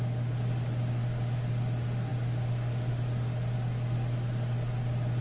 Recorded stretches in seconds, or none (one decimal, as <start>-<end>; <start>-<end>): 0.0-5.2